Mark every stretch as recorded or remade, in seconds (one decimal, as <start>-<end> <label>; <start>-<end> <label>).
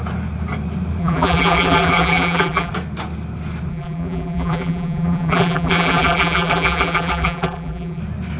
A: 0.0-1.0 recorded; 1.0-2.7 remade; 2.7-3.7 recorded; 3.7-8.0 remade; 8.0-8.4 recorded